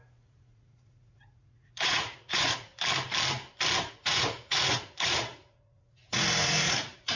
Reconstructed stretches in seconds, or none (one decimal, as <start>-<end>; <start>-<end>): 0.0-2.7; 3.9-7.2